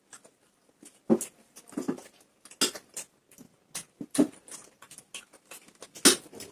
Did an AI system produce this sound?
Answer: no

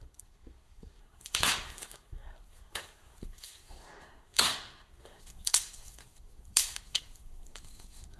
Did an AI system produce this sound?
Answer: yes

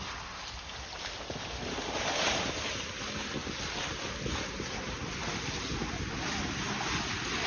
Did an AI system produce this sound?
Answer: no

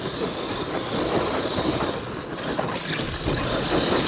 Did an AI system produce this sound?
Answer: no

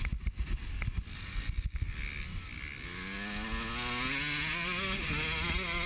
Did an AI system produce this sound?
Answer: no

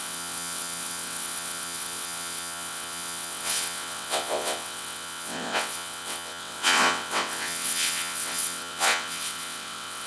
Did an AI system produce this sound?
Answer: yes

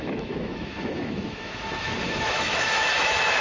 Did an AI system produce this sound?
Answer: yes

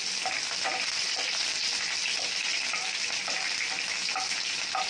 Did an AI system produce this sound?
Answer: no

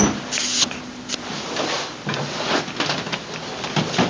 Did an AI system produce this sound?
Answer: no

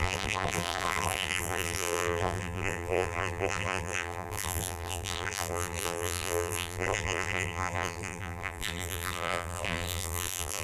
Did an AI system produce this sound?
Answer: yes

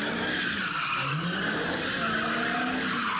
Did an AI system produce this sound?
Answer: no